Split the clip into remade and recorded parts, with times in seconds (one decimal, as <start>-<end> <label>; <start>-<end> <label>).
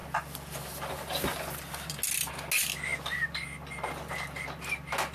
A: 0.0-5.1 recorded